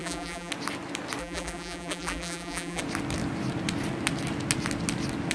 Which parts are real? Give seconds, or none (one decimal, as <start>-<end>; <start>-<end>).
0.5-1.2; 2.8-5.3